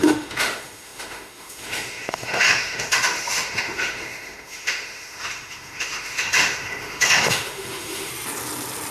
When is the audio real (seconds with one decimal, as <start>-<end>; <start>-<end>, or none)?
8.1-8.9